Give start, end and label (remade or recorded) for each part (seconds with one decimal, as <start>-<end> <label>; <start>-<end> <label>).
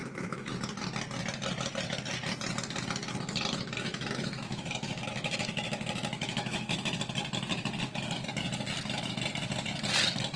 0.0-0.5 remade; 0.5-3.9 recorded; 3.9-7.0 remade; 7.0-10.4 recorded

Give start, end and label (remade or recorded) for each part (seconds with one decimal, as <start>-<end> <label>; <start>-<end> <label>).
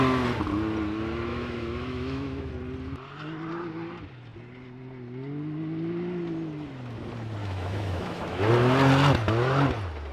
0.0-1.3 recorded; 1.3-2.5 remade; 2.5-7.4 recorded; 7.4-8.5 remade; 8.5-10.1 recorded